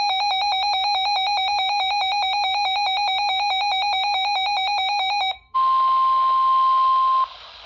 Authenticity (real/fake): real